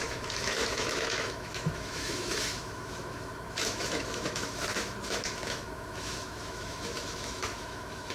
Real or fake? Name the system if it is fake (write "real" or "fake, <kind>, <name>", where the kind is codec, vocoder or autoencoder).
fake, autoencoder, DAC-VAE